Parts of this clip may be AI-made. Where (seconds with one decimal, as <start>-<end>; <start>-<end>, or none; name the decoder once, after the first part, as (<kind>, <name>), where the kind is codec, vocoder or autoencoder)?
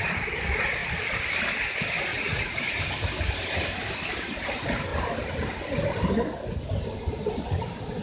2.1-2.8 (vocoder, Vocos)